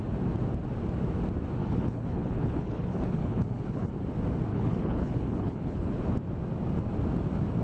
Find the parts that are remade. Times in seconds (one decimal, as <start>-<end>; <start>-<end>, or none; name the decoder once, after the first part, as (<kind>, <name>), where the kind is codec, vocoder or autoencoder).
1.6-3.9 (codec, HILCodec); 4.5-6.0